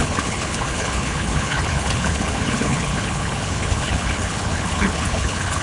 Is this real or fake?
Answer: fake